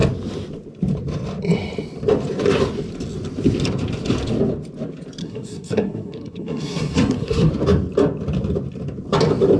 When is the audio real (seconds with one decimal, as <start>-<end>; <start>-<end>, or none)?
0.0-5.2; 7.5-9.6